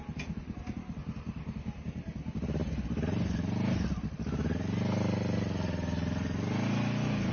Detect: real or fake real